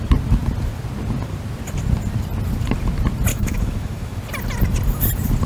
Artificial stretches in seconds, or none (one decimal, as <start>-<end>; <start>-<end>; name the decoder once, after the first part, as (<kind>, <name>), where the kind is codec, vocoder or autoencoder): 3.3-4.2 (autoencoder, DAC-VAE)